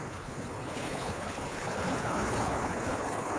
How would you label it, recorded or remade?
remade